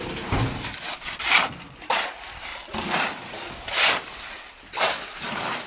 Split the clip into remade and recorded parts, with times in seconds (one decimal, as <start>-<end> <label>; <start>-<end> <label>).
0.0-5.7 recorded

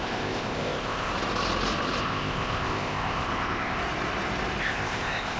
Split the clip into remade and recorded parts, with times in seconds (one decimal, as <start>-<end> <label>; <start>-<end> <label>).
0.0-1.1 remade; 1.1-2.0 recorded; 2.0-3.8 remade; 3.8-4.6 recorded; 4.6-5.4 remade